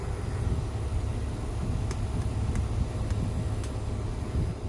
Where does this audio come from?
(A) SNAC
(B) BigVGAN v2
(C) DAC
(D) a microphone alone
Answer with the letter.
D